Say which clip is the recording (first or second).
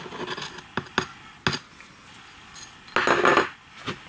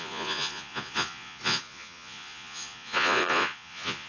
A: first